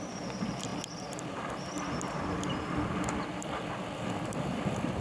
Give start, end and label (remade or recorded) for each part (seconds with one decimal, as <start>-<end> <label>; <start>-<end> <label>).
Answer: 0.0-5.0 remade